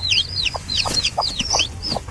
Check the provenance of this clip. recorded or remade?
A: remade